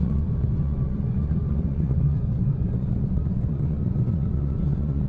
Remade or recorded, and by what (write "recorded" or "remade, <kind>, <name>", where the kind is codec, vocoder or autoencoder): remade, vocoder, Vocos